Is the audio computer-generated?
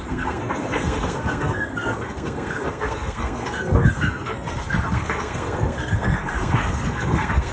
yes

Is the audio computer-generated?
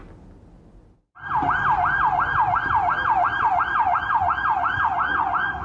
no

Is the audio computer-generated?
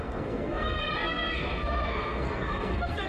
yes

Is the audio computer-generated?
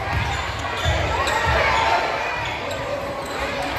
no